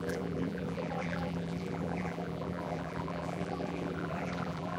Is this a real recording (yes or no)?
no